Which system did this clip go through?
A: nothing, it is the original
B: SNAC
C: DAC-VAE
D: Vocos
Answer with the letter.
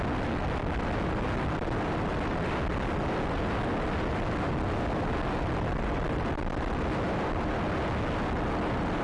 A